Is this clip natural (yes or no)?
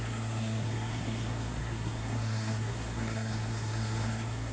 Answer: no